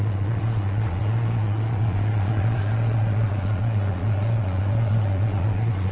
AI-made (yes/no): yes